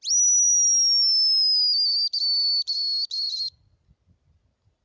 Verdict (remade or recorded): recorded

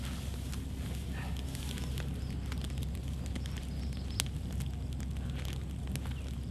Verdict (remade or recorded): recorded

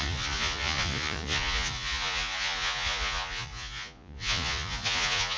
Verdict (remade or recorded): remade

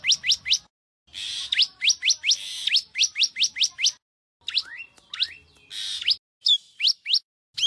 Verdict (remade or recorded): recorded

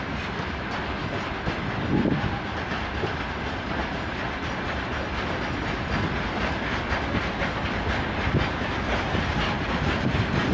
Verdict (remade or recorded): recorded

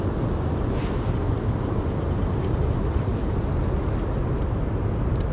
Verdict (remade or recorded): recorded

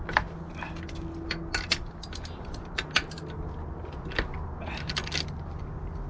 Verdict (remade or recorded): recorded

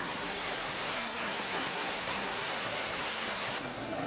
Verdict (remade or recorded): remade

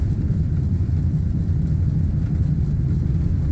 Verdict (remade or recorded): remade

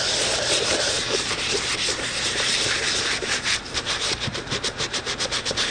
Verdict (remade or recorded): remade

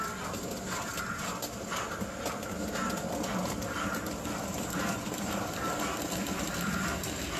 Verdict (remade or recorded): recorded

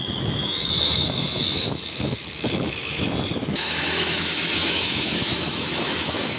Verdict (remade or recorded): remade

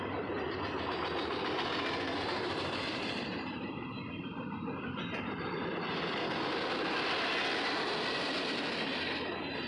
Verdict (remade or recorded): recorded